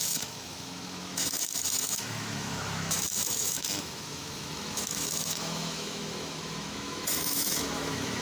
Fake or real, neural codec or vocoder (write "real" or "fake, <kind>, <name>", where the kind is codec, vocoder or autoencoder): fake, autoencoder, DAC-VAE